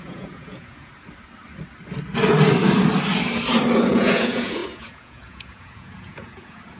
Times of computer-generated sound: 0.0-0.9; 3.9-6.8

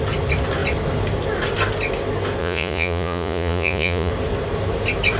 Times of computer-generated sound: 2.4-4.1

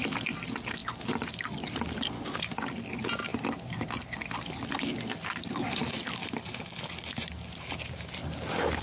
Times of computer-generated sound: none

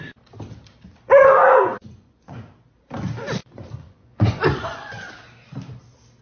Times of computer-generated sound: 1.4-2.4; 3.4-5.1

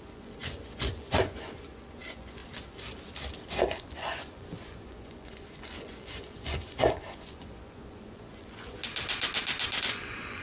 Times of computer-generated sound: 0.0-2.4; 3.5-8.8; 9.8-10.4

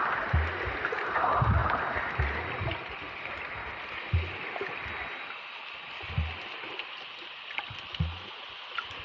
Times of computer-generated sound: none